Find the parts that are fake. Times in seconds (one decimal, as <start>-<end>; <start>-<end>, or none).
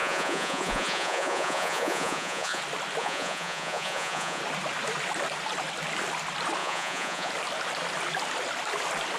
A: 0.0-2.6; 3.0-4.4; 6.6-7.3